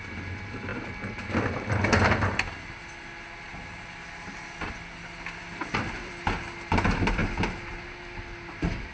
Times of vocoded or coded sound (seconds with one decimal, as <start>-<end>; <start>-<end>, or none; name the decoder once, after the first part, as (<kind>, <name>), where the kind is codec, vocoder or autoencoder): 3.5-6.1 (vocoder, BigVGAN v2); 7.2-8.5